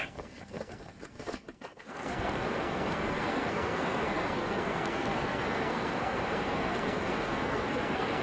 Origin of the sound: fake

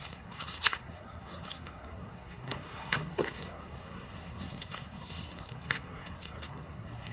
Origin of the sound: fake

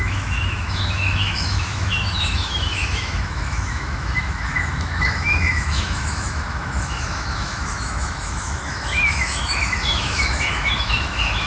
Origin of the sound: fake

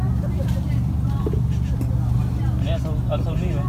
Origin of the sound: real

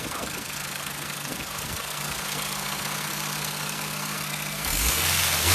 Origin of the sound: fake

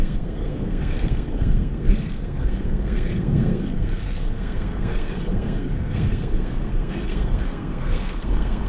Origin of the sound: fake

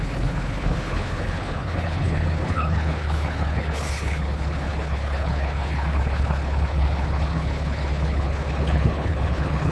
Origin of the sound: fake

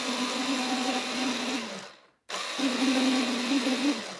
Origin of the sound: real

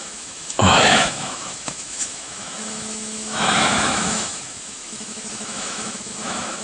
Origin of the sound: fake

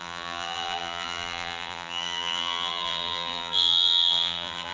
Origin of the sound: fake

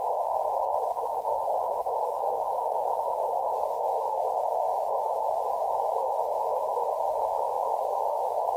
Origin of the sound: fake